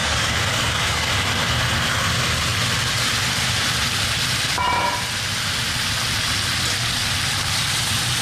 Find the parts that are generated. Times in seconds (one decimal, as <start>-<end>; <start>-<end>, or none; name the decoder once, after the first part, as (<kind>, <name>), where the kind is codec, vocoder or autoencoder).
0.0-1.1 (codec, DAC)